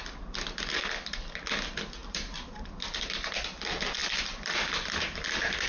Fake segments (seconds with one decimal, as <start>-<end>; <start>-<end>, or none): 2.0-3.3; 4.0-5.7